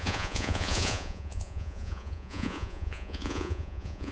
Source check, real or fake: fake